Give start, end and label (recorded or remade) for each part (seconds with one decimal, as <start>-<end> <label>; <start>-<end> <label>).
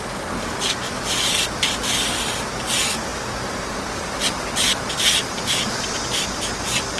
0.0-7.0 recorded